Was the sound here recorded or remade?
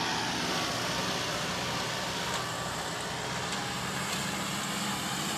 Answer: recorded